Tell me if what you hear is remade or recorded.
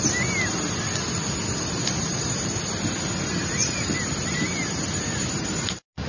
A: recorded